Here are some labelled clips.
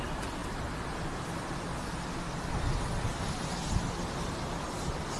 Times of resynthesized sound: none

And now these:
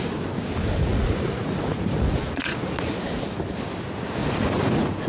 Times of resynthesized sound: 0.8-3.2; 4.2-5.1

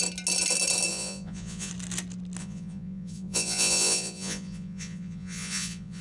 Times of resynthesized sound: 0.9-1.7; 2.4-6.0

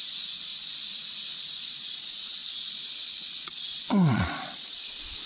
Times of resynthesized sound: 0.0-0.5; 1.4-5.3

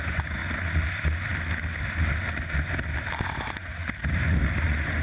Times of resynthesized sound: 0.0-0.4; 3.2-3.7; 4.6-5.0